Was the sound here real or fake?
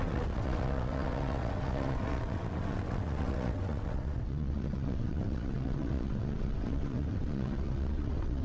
fake